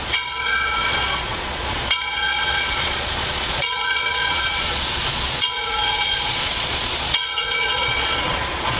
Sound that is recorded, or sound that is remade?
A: remade